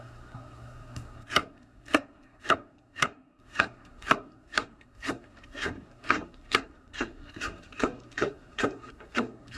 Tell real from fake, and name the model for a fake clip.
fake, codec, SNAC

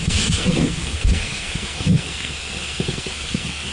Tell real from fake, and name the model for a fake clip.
fake, codec, SNAC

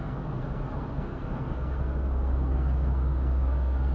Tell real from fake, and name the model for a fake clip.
fake, codec, SNAC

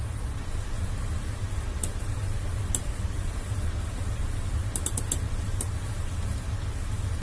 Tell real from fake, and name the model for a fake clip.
real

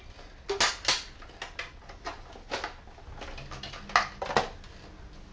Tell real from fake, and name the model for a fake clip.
real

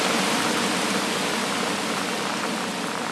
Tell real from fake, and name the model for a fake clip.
real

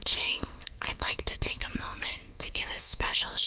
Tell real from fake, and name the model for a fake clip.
fake, codec, SNAC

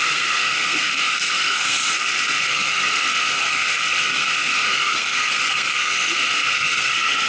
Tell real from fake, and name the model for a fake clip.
fake, codec, SNAC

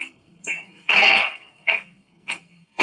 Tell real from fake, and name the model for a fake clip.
fake, codec, SNAC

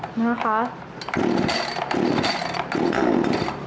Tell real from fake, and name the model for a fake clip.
real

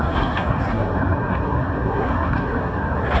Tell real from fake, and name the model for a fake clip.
fake, codec, SNAC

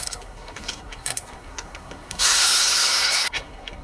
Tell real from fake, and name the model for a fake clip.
fake, codec, SNAC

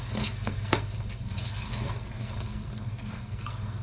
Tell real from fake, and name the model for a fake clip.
fake, codec, SNAC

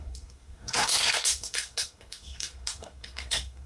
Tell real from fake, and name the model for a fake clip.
fake, codec, SNAC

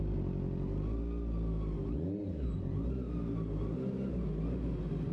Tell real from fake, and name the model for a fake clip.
real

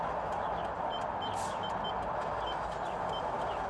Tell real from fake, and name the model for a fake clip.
real